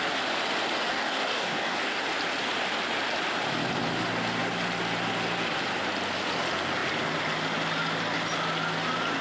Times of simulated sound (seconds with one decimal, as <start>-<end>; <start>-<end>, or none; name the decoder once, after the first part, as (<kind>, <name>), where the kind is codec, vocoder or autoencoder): 0.9-2.0 (codec, DAC)